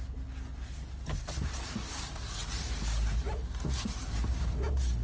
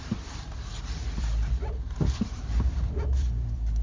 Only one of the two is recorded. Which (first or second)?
first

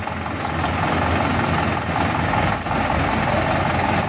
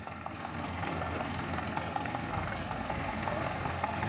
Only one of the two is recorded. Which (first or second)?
first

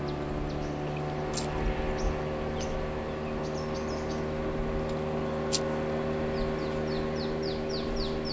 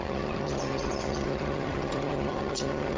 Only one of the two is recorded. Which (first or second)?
first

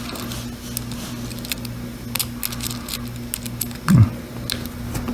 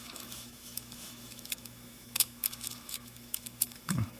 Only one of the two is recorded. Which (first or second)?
first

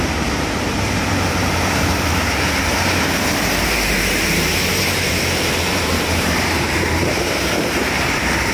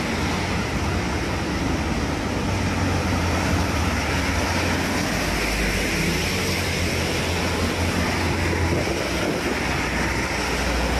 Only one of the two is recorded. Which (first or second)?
second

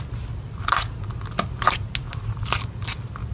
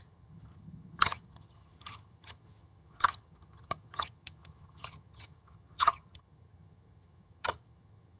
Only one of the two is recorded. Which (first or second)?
first